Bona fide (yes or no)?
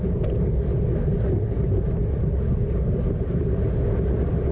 yes